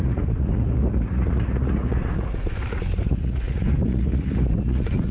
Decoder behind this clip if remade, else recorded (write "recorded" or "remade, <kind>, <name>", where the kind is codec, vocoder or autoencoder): remade, vocoder, Vocos